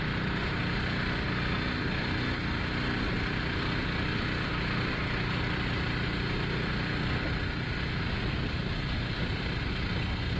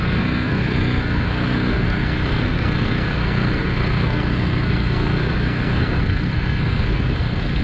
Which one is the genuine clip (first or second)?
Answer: first